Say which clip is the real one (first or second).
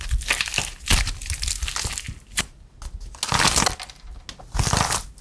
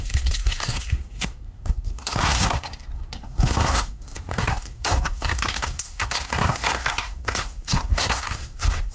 first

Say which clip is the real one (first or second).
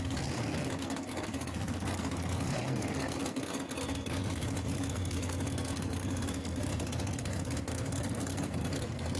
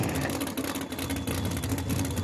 second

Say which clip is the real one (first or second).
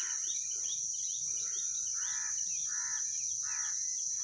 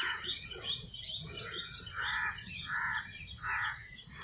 first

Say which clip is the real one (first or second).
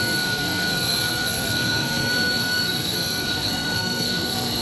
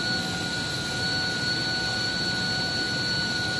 second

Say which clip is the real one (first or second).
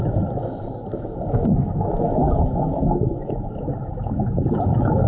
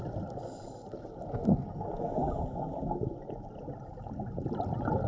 second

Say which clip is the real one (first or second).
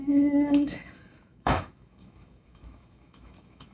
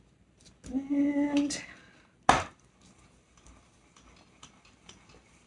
second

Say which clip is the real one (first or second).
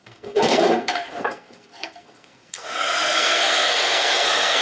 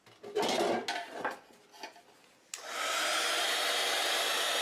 second